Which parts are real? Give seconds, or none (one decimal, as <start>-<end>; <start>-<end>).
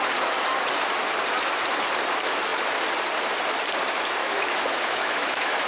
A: 0.0-4.2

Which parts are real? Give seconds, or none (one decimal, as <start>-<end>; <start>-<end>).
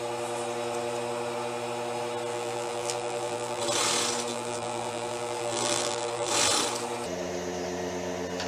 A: 0.0-2.3; 3.6-4.3; 6.3-8.5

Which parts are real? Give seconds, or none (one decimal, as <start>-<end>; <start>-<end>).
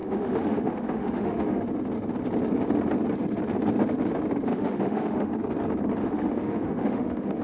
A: 1.6-4.5; 5.3-6.0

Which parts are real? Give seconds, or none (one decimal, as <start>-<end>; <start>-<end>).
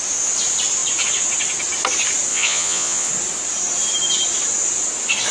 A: 0.0-2.3; 3.1-5.3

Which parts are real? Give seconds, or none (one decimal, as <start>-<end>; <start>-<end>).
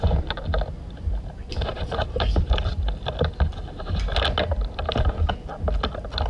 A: 0.0-6.3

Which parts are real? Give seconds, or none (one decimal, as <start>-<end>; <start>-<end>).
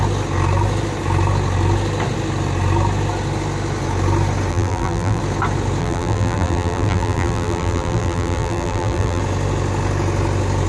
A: 0.0-4.5; 5.2-5.8; 9.2-10.7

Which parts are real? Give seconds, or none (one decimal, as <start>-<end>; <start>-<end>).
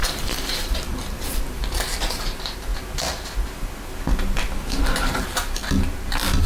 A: 2.7-4.6; 5.6-6.5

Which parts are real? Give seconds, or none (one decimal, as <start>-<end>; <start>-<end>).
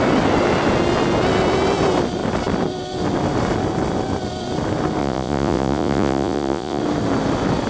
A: 0.0-5.0; 6.8-7.7